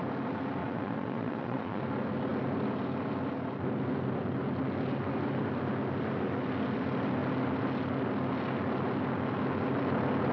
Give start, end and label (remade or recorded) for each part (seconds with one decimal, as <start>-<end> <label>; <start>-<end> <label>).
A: 0.0-0.6 recorded; 0.6-1.8 remade; 1.8-10.3 recorded